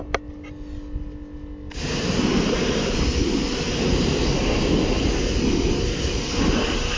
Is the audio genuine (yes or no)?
yes